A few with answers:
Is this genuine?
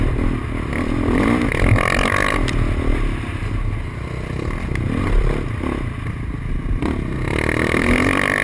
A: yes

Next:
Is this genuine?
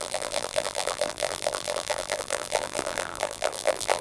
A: no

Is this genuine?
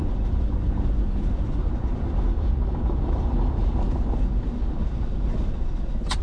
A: yes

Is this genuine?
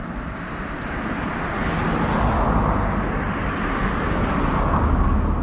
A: yes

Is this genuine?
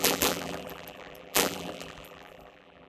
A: no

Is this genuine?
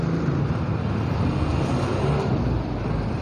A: yes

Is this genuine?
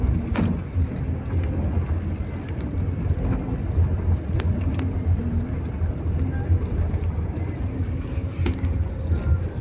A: yes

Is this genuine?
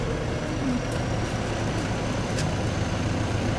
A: yes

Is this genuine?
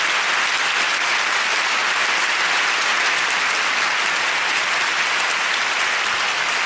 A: yes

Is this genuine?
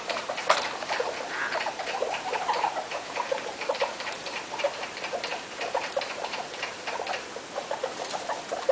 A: no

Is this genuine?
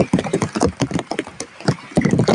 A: no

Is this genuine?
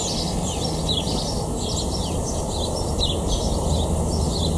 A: yes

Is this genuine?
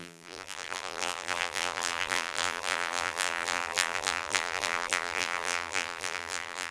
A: no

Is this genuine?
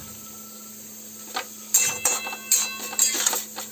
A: yes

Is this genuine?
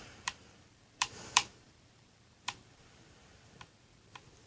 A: no